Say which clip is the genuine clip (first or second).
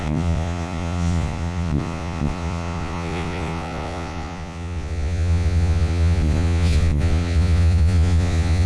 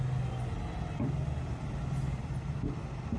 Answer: second